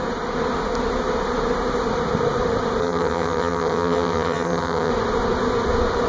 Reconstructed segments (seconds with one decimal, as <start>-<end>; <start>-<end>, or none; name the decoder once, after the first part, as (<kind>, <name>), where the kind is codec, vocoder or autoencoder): 2.8-4.9 (vocoder, HiFi-GAN)